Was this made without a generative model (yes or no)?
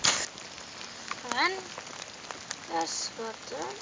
yes